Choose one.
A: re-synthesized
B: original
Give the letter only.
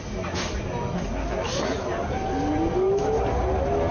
B